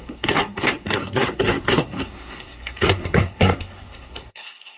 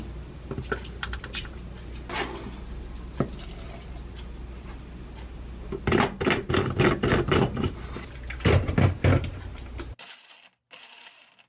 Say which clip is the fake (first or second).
first